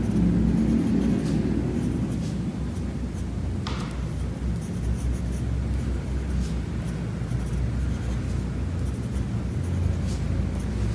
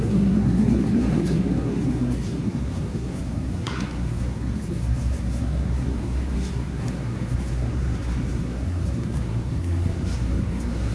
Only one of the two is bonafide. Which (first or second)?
first